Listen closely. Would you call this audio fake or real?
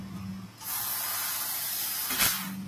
real